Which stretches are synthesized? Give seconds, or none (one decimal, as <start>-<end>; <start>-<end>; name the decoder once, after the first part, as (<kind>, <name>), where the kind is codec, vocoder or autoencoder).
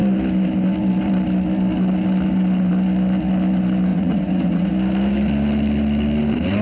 3.9-4.7 (vocoder, Vocos)